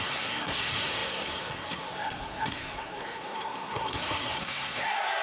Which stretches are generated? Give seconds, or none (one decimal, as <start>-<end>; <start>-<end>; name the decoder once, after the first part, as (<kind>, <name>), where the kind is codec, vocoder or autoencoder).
0.0-5.2 (codec, SNAC)